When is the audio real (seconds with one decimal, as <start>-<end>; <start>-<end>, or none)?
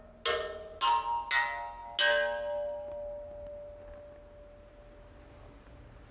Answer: 0.0-6.1